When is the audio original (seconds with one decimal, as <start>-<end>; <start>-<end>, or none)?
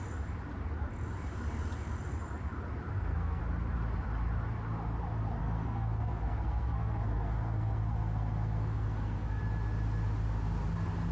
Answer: 0.0-2.9; 3.4-5.4; 9.4-11.1